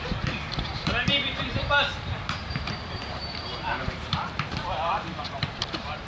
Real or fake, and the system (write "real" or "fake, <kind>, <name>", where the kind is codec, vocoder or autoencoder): fake, vocoder, BigVGAN v2